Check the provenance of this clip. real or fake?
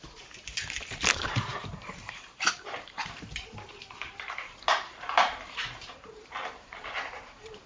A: fake